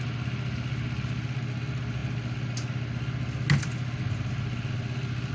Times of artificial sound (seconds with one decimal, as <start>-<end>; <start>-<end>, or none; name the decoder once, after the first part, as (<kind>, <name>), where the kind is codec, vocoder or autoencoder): none